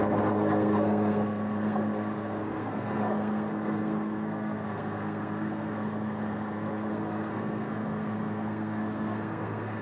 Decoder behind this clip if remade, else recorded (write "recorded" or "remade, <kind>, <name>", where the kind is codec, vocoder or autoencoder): remade, codec, SNAC